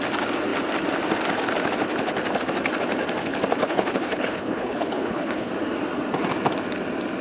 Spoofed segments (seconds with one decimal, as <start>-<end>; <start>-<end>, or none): 3.6-5.5